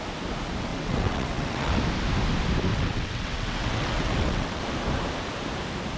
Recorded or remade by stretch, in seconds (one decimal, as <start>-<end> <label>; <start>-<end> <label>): 0.0-0.7 recorded; 0.7-1.8 remade; 1.8-2.7 recorded; 2.7-4.6 remade; 4.6-6.0 recorded